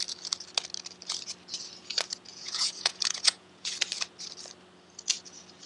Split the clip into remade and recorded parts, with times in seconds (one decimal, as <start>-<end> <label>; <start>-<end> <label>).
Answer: 0.0-2.3 recorded; 2.3-3.7 remade; 3.7-5.7 recorded